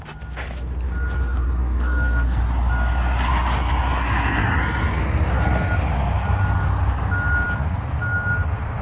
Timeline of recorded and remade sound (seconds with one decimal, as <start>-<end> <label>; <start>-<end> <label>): 0.0-1.6 recorded; 1.6-2.4 remade; 2.4-8.8 recorded